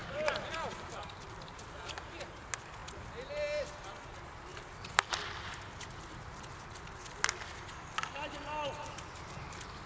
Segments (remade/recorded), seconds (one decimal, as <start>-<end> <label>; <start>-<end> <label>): 0.0-1.6 remade; 1.6-9.9 recorded